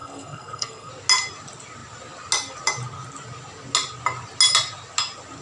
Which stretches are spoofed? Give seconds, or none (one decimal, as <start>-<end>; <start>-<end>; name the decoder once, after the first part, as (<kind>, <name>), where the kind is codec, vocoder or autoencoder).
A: 0.0-0.9 (codec, SNAC)

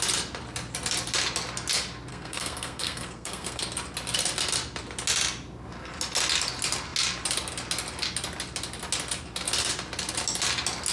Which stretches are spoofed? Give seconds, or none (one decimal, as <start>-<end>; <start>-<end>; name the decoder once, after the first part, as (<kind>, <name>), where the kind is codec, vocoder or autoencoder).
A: 2.1-3.6 (codec, SNAC)